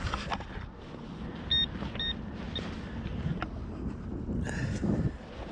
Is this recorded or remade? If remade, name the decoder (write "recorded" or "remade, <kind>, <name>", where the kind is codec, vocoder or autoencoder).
recorded